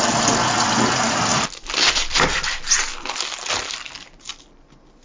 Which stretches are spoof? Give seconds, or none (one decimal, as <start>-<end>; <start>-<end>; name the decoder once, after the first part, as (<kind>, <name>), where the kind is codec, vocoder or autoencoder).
none